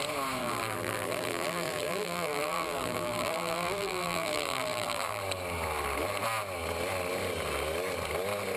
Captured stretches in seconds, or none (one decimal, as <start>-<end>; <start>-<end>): 0.0-0.4; 5.2-8.6